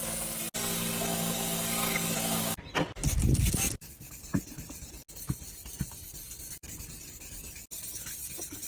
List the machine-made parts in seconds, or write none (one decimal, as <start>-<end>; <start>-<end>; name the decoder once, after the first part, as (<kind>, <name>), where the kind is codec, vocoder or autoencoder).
5.6-6.8 (vocoder, BigVGAN v2)